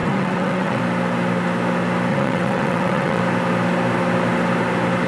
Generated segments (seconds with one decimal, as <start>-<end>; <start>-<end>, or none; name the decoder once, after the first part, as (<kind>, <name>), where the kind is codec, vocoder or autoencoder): 0.0-0.8 (vocoder, WaveNeXt); 2.1-3.2